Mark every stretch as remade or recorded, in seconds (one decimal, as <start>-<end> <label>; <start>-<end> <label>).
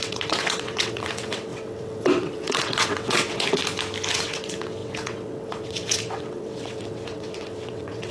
0.0-3.6 remade; 3.6-4.1 recorded; 4.1-8.1 remade